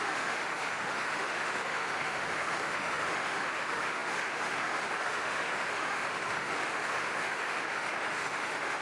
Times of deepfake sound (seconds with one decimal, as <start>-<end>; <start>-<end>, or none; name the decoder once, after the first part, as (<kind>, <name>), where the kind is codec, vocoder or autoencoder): 0.0-8.8 (autoencoder, DAC-VAE)